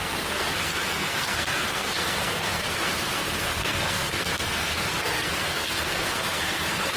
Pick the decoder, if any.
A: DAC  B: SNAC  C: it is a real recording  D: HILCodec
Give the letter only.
B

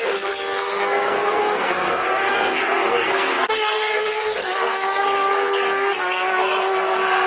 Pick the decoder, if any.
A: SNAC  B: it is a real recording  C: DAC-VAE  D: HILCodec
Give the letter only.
A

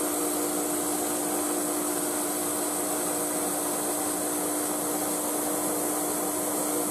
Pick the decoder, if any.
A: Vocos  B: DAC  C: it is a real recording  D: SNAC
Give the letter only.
C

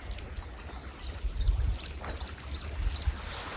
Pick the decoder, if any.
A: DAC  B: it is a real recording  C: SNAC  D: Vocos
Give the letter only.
B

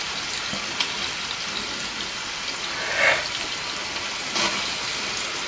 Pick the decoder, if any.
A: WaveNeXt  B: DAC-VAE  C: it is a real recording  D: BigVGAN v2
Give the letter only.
C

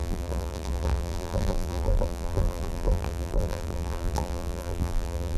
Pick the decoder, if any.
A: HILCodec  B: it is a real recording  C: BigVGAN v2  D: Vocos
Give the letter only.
C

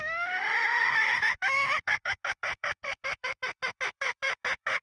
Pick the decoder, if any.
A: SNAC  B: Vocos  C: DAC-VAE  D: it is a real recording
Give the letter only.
C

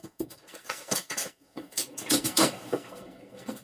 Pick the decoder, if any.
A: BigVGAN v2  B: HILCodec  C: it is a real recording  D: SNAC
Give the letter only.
D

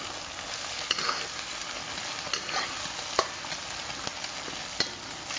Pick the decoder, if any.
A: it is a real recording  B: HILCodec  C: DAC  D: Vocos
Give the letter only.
A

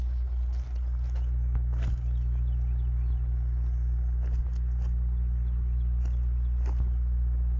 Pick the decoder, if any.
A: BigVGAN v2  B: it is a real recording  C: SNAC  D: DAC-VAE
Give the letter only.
B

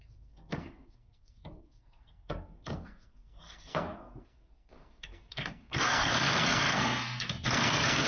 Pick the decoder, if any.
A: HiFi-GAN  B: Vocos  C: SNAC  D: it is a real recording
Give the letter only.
C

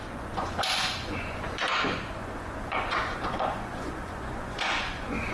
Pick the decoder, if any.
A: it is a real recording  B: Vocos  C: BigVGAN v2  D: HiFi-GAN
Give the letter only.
B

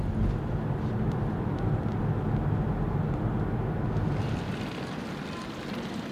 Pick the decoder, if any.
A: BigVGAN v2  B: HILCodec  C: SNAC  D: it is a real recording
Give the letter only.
D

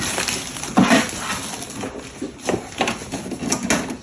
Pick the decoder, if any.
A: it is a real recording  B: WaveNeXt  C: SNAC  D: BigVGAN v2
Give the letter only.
A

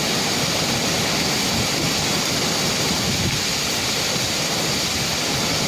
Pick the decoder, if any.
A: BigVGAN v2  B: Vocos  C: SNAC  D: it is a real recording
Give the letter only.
D